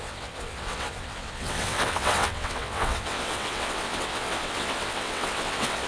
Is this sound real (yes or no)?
no